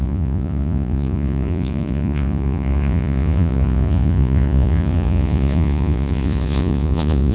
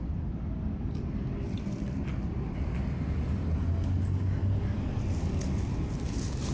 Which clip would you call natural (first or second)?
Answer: second